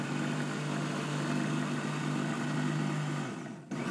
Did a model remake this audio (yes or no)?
no